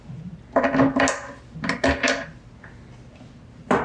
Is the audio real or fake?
real